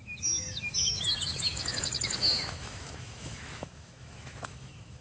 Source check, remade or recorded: remade